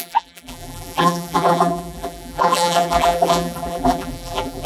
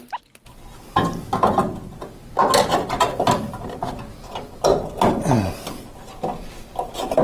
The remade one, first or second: first